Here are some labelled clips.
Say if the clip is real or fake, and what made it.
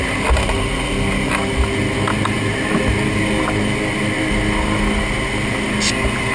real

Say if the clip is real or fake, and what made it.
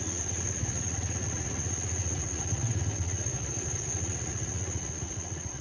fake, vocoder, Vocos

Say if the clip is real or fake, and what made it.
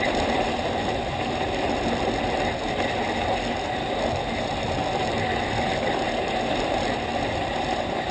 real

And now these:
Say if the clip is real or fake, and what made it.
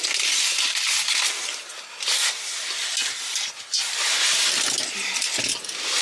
real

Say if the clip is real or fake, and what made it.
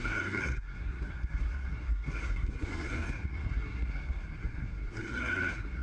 fake, codec, SNAC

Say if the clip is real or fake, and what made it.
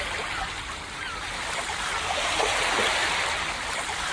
real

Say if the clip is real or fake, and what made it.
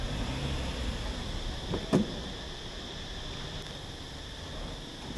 real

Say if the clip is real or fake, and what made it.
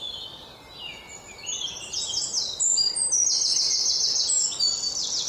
real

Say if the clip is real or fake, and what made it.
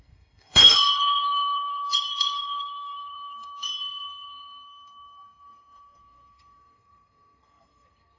fake, codec, SNAC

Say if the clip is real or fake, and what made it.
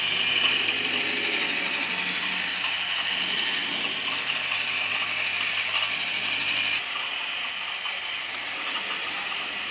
real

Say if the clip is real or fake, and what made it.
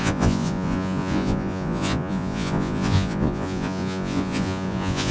fake, vocoder, Vocos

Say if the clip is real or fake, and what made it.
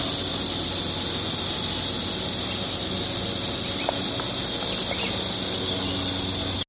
real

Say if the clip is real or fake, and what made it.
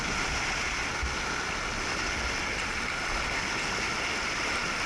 real